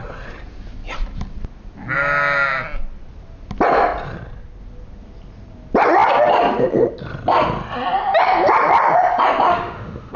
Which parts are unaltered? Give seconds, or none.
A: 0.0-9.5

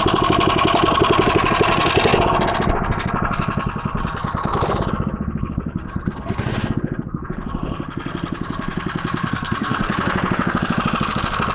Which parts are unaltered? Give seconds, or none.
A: 0.0-9.2; 9.9-11.5